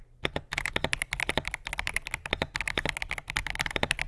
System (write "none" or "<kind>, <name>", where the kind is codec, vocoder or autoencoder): none